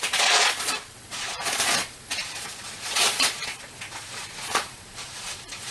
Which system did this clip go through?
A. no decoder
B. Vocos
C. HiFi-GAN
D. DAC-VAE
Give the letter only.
B